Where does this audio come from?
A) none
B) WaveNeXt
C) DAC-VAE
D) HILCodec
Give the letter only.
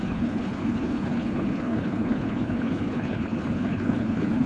D